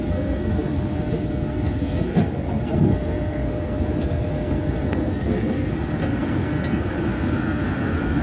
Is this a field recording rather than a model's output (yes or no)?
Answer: no